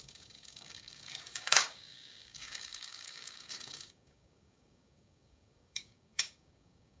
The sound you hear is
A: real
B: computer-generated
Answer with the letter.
B